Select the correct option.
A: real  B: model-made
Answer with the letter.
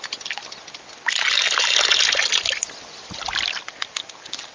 A